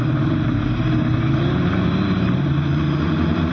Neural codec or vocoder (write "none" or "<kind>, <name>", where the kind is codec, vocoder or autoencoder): vocoder, BigVGAN v2